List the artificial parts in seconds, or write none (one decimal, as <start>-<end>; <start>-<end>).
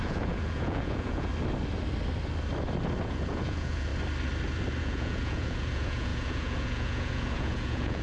0.0-1.3; 3.1-3.9; 4.8-8.0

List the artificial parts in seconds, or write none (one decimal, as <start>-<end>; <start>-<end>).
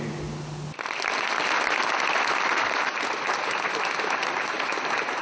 2.5-5.2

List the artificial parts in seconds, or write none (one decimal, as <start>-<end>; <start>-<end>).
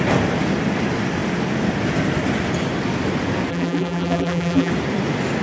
3.5-4.7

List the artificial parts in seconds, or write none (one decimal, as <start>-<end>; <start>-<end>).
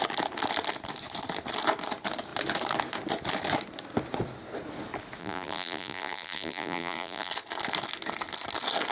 5.2-7.3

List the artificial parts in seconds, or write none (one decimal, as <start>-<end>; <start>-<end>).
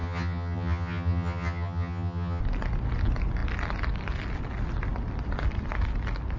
0.0-2.4